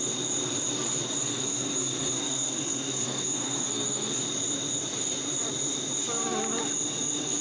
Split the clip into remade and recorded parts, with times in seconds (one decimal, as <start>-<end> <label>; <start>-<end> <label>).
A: 0.0-1.2 recorded; 1.2-4.2 remade; 4.2-7.4 recorded